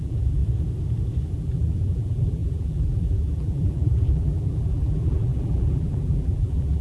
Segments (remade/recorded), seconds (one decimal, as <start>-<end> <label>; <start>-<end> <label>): 0.0-0.4 remade; 0.4-1.4 recorded; 1.4-6.8 remade